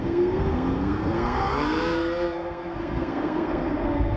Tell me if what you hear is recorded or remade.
remade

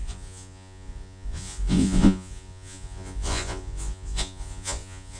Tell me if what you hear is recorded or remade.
remade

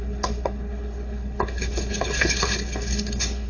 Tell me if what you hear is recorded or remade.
remade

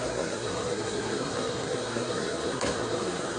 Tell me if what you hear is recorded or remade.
remade